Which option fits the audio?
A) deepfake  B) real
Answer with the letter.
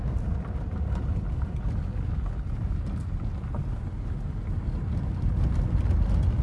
B